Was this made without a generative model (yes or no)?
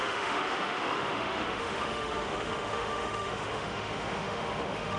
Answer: no